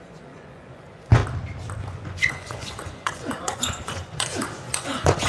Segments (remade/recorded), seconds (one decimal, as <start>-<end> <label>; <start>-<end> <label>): 0.0-1.2 remade; 1.2-1.8 recorded; 1.8-5.3 remade